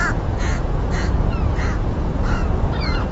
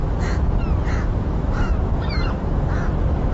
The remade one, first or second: first